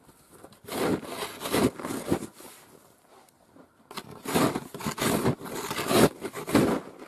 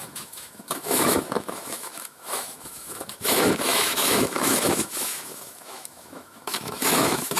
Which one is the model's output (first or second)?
second